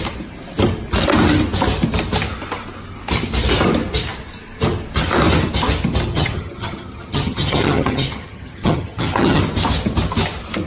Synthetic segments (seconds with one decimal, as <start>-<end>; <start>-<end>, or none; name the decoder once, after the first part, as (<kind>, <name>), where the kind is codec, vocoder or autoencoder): 6.1-9.4 (vocoder, HiFi-GAN)